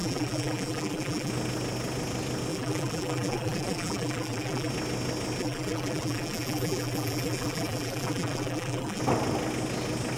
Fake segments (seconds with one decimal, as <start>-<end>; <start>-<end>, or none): 0.0-1.3; 2.5-4.7; 5.4-9.0